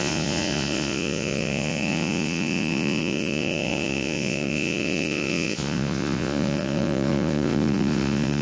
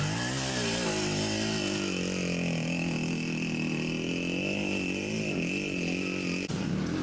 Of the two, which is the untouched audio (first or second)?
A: second